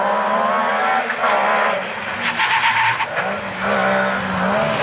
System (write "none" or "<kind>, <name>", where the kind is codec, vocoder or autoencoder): none